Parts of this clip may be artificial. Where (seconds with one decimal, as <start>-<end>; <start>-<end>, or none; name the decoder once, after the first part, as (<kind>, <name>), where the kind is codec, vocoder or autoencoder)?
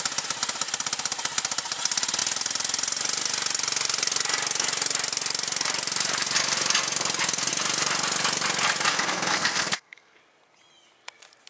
8.9-10.2 (codec, SNAC)